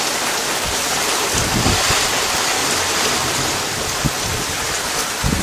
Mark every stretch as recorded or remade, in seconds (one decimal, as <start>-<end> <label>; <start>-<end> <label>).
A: 0.0-0.4 recorded; 0.4-1.2 remade; 1.2-2.6 recorded; 2.6-4.3 remade; 4.3-5.4 recorded